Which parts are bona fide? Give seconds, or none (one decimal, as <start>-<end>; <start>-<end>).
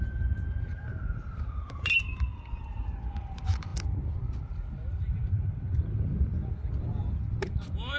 0.0-0.9; 2.0-8.0